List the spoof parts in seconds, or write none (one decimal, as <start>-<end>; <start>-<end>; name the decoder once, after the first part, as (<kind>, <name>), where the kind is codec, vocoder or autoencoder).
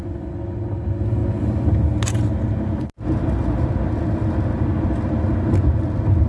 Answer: none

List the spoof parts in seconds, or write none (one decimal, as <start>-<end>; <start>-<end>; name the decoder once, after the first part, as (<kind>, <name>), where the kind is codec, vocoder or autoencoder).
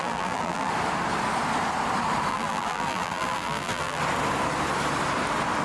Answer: 0.0-0.7 (vocoder, BigVGAN v2); 2.3-4.0